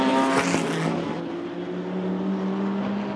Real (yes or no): yes